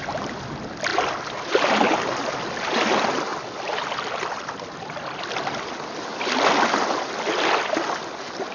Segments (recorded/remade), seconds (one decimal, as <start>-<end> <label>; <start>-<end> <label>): 0.0-8.5 recorded